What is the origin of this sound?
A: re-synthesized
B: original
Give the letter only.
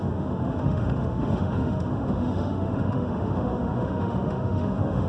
A